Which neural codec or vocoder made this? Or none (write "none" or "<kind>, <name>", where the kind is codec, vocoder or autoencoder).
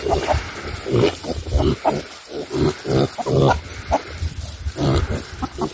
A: none